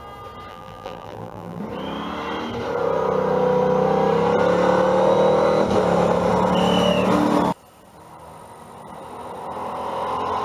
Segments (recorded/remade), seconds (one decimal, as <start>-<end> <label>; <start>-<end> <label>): 0.0-0.5 recorded; 0.5-1.6 remade; 1.6-10.4 recorded